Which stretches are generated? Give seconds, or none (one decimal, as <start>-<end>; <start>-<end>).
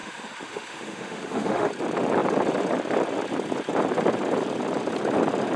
0.0-1.7